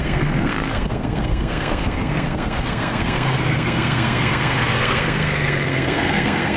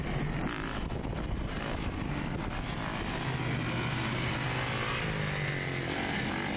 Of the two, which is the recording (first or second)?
second